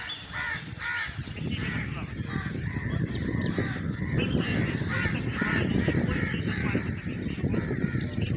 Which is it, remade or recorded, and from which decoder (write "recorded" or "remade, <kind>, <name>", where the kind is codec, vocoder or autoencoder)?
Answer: remade, vocoder, BigVGAN v2